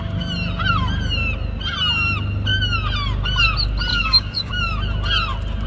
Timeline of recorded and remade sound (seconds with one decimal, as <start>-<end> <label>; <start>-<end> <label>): 0.0-3.9 recorded; 3.9-4.5 remade; 4.5-5.7 recorded